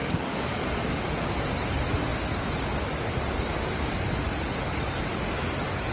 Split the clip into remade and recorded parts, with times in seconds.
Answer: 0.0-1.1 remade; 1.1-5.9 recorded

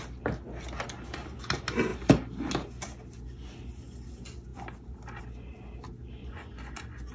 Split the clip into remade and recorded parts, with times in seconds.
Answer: 0.0-6.2 recorded; 6.2-7.1 remade

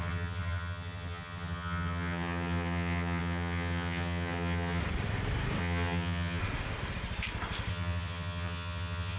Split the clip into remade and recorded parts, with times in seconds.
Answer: 0.0-4.8 remade; 4.8-5.6 recorded; 5.6-6.4 remade; 6.4-7.7 recorded; 7.7-9.2 remade